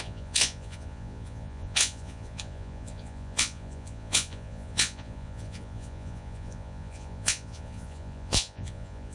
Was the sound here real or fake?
fake